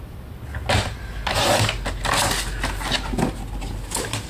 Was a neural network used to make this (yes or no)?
no